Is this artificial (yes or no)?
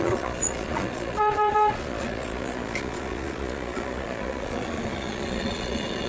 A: yes